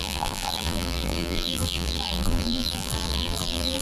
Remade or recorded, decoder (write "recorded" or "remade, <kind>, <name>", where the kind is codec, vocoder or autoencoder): remade, vocoder, BigVGAN v2